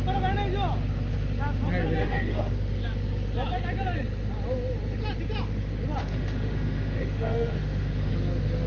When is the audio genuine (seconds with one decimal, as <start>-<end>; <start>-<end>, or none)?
0.0-2.0; 2.5-6.0; 8.1-8.7